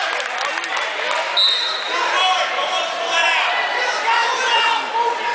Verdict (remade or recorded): recorded